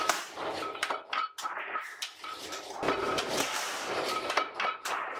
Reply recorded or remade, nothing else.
recorded